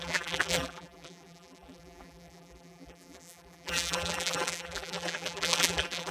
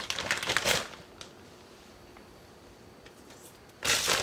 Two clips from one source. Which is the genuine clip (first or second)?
second